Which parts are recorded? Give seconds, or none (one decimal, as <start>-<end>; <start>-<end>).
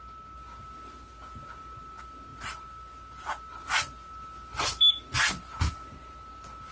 0.0-6.7